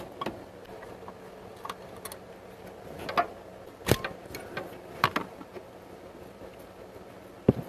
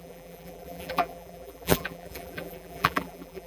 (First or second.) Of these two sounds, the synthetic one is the second